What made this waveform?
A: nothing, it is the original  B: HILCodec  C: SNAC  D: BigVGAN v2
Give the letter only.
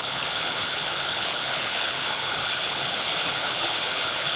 B